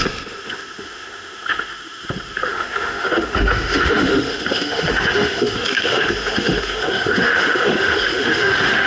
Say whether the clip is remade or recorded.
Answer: remade